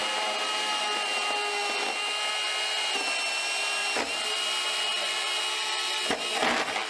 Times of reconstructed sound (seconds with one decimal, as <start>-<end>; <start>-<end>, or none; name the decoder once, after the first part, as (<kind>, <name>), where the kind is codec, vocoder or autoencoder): 3.8-5.4 (vocoder, BigVGAN v2)